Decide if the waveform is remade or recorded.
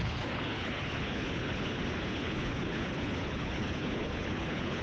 remade